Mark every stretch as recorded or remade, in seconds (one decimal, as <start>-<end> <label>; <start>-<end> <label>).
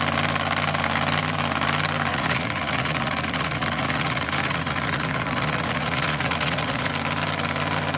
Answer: 0.0-2.1 recorded; 2.1-6.9 remade; 6.9-8.0 recorded